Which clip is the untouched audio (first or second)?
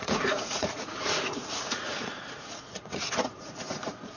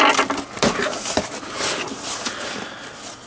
second